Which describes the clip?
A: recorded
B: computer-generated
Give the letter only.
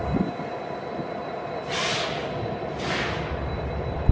A